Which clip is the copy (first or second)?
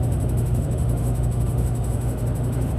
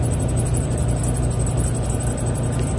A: first